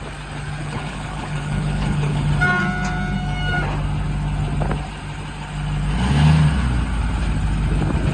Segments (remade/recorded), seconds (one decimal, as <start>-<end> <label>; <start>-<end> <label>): 0.0-0.6 recorded; 0.6-2.3 remade; 2.3-8.1 recorded